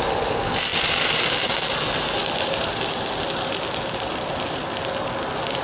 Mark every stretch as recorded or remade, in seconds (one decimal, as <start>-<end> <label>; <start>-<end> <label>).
0.0-0.7 recorded; 0.7-1.5 remade; 1.5-2.2 recorded; 2.2-4.9 remade; 4.9-5.6 recorded